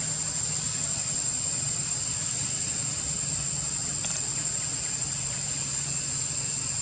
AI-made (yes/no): no